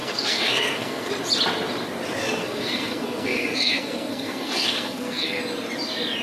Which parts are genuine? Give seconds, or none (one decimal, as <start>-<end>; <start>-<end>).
1.1-2.4; 5.4-6.2